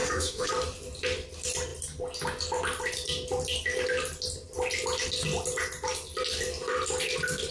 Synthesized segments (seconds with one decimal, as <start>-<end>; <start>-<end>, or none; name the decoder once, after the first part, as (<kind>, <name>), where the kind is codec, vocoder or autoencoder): 0.0-0.5 (autoencoder, DAC-VAE)